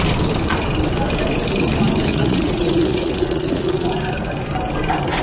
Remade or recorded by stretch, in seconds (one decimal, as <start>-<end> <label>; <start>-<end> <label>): 0.0-2.1 recorded; 2.1-3.9 remade; 3.9-5.2 recorded